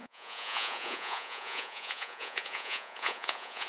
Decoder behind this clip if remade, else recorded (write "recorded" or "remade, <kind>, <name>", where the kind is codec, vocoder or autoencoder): remade, vocoder, Vocos